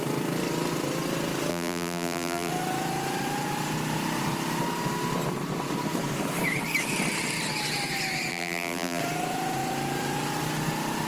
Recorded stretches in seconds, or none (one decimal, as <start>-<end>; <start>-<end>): 0.0-1.5; 2.5-8.3; 9.0-11.1